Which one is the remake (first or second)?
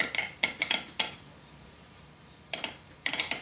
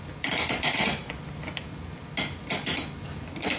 first